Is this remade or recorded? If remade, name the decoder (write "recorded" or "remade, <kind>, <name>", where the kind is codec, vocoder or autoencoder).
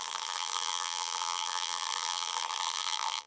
remade, vocoder, BigVGAN v2